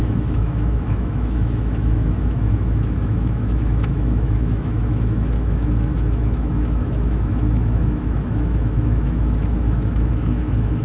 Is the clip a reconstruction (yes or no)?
yes